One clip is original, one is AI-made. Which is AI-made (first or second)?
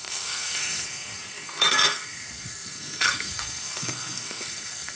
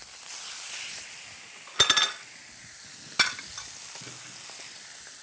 first